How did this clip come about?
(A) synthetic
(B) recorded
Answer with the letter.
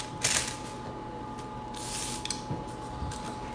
B